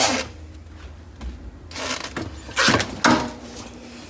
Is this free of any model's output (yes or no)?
yes